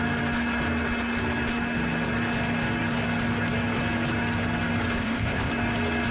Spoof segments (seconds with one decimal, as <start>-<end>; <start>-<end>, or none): 5.0-5.5

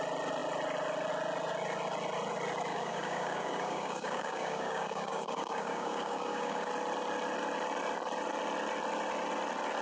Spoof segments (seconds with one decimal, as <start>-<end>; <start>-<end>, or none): 2.7-6.7

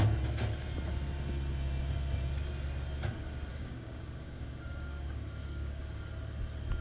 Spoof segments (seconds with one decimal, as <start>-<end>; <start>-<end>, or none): 3.5-6.1